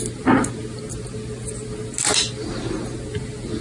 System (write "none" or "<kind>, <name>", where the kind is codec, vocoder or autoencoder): none